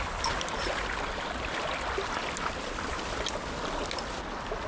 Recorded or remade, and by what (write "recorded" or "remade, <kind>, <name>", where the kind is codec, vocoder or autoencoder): recorded